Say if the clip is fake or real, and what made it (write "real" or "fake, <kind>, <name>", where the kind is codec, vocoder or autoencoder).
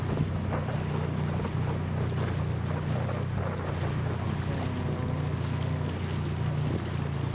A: real